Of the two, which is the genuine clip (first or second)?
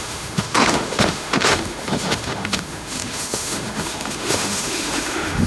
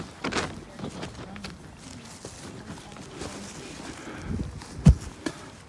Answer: second